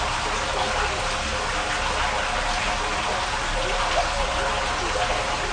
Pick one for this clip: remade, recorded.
recorded